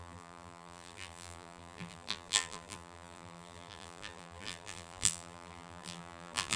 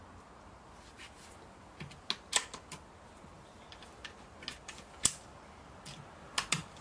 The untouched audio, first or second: second